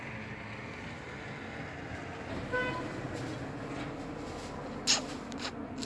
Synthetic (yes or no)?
no